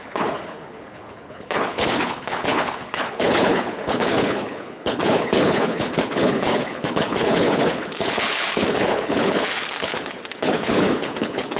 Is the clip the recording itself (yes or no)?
no